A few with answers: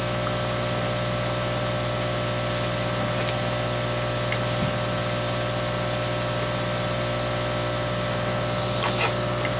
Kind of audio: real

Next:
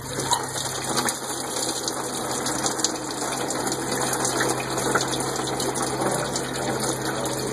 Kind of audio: real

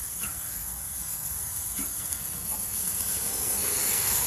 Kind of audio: fake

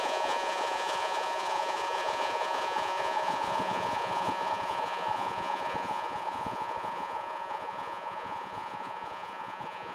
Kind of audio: fake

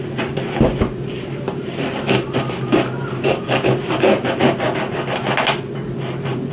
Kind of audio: real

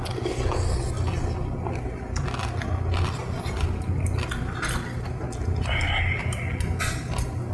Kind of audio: real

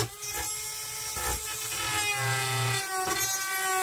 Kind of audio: real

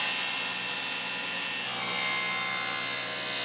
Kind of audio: real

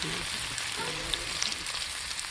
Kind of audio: real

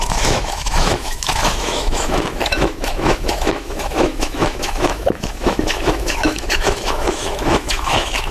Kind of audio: fake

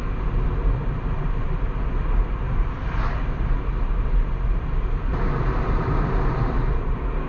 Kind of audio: real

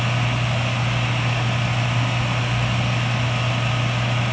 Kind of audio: real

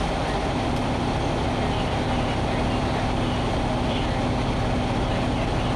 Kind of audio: real